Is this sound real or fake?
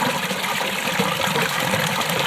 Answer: real